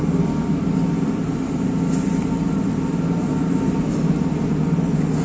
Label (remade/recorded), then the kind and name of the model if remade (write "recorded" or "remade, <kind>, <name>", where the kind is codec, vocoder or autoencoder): recorded